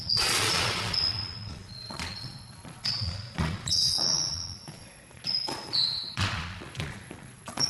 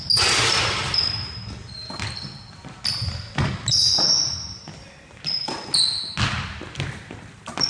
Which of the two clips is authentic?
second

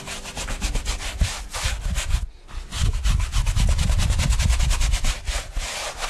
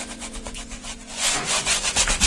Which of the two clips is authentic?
first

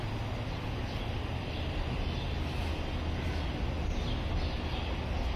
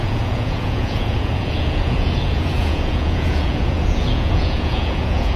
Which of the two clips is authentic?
first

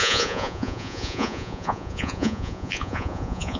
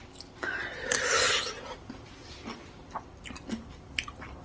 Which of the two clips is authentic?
second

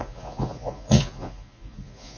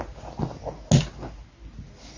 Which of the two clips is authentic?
second